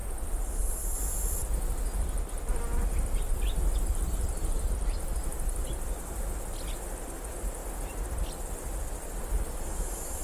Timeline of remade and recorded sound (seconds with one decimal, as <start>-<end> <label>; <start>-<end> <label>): 0.0-7.6 remade; 7.6-8.2 recorded; 8.2-10.2 remade